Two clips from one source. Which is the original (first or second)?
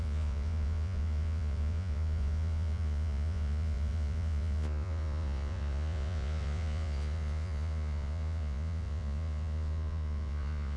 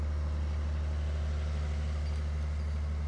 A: second